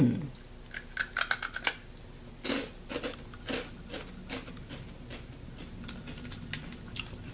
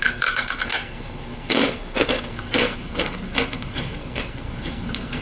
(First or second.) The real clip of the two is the first